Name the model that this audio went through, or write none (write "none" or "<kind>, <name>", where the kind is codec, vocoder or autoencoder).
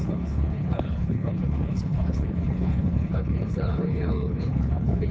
codec, HILCodec